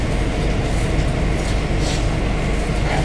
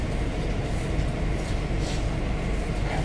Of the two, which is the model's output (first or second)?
second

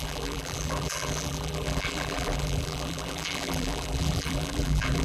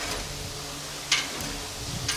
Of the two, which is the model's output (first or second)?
first